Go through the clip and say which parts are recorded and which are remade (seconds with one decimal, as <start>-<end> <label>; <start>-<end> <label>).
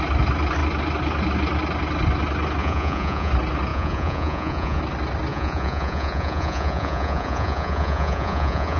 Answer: 0.0-2.6 recorded; 2.6-3.3 remade; 3.3-3.7 recorded; 3.7-4.8 remade; 4.8-5.3 recorded; 5.3-8.8 remade